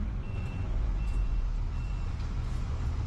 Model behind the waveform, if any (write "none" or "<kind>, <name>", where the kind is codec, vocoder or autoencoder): vocoder, Vocos